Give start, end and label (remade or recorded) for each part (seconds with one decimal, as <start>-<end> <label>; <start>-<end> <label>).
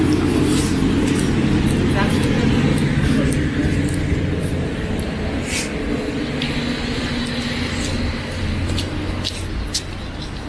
0.0-2.1 recorded; 2.1-3.0 remade; 3.0-4.5 recorded; 4.5-5.6 remade; 5.6-10.5 recorded